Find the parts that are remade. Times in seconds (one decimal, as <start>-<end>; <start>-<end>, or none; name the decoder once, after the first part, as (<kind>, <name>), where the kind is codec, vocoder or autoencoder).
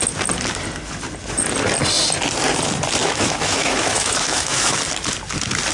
3.0-4.8 (autoencoder, DAC-VAE)